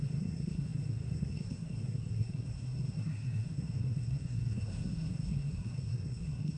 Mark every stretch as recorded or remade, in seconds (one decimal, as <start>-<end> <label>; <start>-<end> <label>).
0.0-6.6 remade